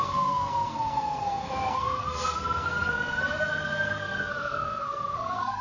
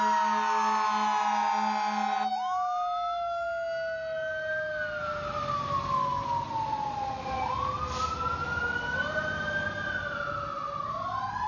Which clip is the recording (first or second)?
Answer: second